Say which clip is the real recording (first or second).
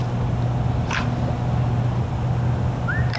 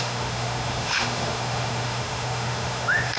first